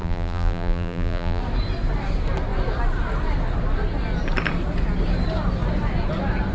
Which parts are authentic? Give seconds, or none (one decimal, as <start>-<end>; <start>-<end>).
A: 1.4-6.5

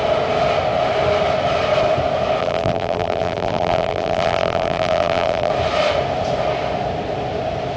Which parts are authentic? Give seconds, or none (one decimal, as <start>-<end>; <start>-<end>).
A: 0.0-2.4; 5.5-7.8